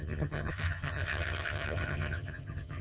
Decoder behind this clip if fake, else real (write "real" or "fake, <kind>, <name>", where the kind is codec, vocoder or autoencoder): fake, vocoder, HiFi-GAN